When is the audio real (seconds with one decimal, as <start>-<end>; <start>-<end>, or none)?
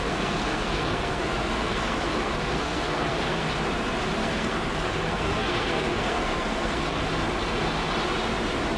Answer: 3.5-4.2; 7.0-8.8